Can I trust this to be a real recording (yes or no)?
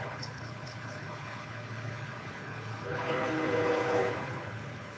no